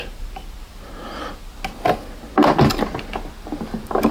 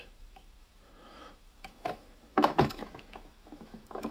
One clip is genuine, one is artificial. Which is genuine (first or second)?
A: first